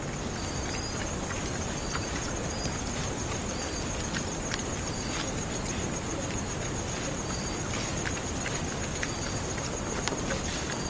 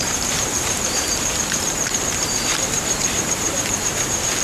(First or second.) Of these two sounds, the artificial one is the second